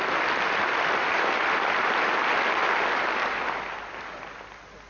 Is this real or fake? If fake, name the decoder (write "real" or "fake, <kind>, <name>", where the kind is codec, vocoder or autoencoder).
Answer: real